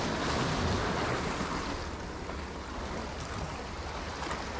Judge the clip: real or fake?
real